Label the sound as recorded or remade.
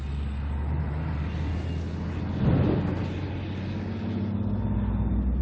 recorded